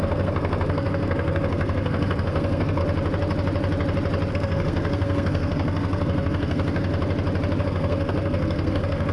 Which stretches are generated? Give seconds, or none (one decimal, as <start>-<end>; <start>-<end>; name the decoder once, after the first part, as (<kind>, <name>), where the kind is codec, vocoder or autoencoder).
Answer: 0.0-2.8 (codec, SNAC); 4.3-6.9; 7.6-9.1

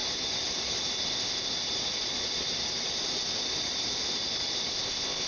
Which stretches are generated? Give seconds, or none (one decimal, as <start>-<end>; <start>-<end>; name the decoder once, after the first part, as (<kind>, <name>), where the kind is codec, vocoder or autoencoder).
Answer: 1.1-1.5 (codec, ZipCodec); 4.7-5.3

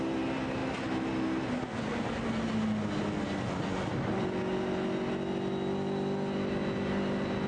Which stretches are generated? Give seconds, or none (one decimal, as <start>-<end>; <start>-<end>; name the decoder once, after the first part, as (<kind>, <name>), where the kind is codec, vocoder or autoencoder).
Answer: none